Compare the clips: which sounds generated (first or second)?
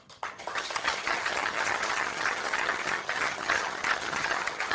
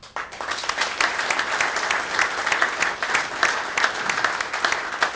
first